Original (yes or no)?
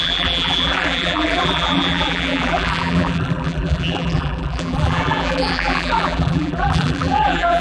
no